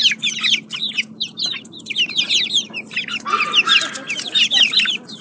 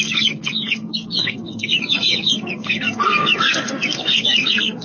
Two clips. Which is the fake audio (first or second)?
second